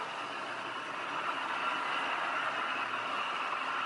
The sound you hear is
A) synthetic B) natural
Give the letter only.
B